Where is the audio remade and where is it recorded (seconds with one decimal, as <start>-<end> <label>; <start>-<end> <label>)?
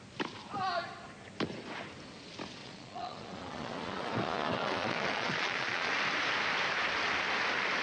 0.0-2.6 recorded; 2.6-5.9 remade; 5.9-7.8 recorded